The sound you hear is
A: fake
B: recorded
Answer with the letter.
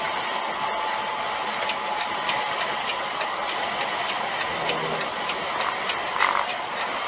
B